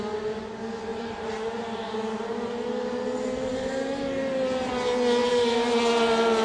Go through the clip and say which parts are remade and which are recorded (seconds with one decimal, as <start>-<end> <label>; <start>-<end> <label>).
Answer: 0.0-0.9 recorded; 0.9-4.7 remade; 4.7-5.2 recorded; 5.2-5.8 remade; 5.8-6.4 recorded